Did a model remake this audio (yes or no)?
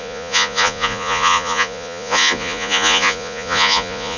yes